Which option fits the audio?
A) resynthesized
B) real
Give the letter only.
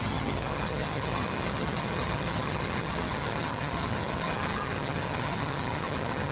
A